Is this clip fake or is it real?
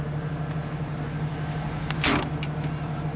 real